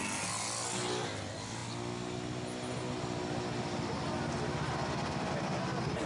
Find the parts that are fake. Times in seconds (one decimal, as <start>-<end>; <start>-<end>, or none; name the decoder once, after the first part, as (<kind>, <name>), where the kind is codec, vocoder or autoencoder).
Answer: none